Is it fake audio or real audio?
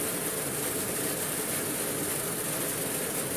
real